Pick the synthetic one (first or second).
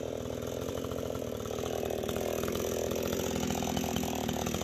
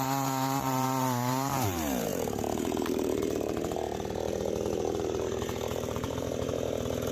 second